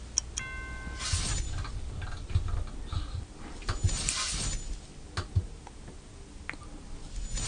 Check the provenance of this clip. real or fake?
real